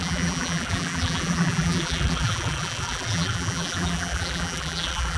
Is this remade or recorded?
remade